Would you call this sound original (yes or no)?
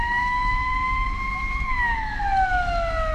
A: no